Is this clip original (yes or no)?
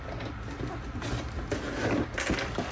yes